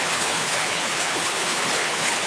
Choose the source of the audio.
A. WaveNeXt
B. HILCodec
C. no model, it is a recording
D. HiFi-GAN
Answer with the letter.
B